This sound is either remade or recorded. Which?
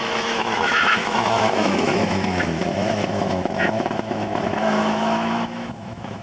remade